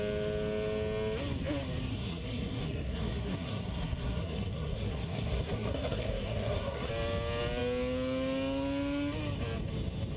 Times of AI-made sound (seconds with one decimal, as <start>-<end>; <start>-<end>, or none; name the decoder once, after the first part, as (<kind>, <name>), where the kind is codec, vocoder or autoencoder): 1.9-6.9 (codec, SNAC)